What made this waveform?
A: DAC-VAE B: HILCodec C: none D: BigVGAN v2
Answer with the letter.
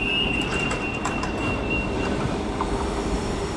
D